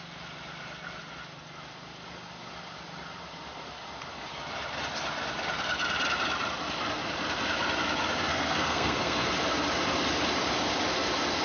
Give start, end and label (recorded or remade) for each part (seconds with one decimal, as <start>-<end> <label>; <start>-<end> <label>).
0.0-8.3 recorded; 8.3-9.3 remade; 9.3-11.4 recorded